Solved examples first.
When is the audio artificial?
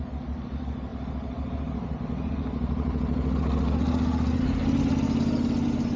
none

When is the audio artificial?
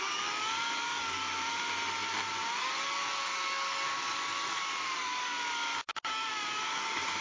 0.0-1.2 (codec, DAC); 2.5-7.2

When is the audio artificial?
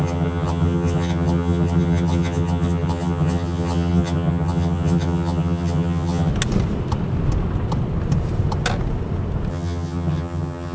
0.0-6.3 (vocoder, HiFi-GAN); 9.5-10.7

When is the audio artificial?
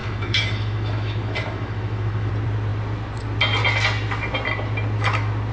0.0-2.3 (autoencoder, DAC-VAE)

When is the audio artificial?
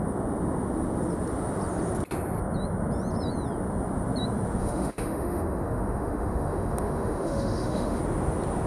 4.6-8.0 (autoencoder, DAC-VAE)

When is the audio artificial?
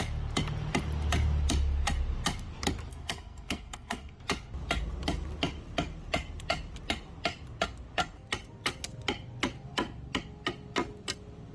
2.9-4.2 (codec, SNAC)